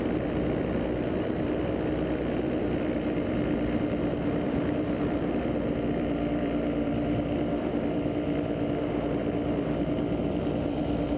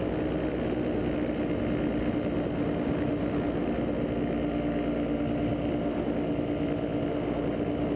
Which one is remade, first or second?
first